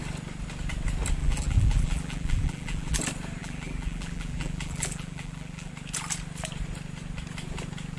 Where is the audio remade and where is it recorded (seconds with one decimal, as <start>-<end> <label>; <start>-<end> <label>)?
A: 0.0-1.2 recorded; 1.2-3.0 remade; 3.0-3.4 recorded; 3.4-5.7 remade; 5.7-8.0 recorded

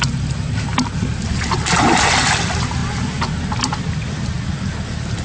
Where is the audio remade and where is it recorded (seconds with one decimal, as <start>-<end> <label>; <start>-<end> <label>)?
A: 0.0-5.2 recorded

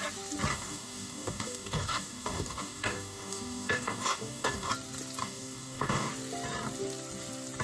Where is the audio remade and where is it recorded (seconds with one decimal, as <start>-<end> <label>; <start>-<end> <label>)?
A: 0.0-0.5 recorded; 0.5-4.7 remade; 4.7-5.2 recorded; 5.2-6.1 remade; 6.1-7.6 recorded